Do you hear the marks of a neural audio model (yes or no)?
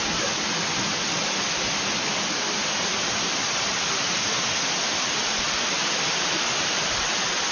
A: no